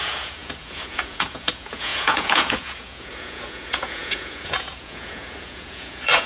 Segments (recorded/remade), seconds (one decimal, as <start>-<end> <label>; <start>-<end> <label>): 0.0-6.3 remade